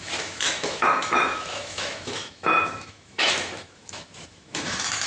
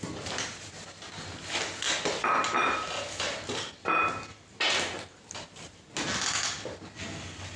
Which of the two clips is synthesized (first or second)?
first